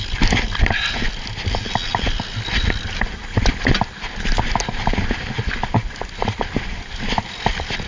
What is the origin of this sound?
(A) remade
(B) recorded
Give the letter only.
B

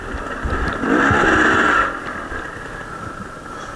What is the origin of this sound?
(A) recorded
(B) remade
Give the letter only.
A